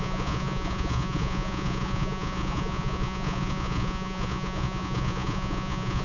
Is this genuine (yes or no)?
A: no